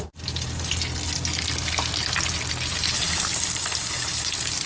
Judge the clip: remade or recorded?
recorded